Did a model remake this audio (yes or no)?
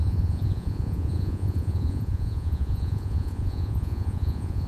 yes